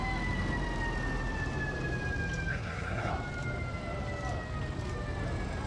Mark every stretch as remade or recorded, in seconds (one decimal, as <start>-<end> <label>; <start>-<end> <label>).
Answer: 0.0-2.5 recorded; 2.5-3.1 remade; 3.1-5.7 recorded